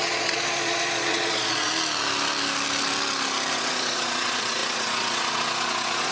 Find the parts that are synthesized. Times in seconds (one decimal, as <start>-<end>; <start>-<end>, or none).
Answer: 0.0-1.7; 3.5-6.1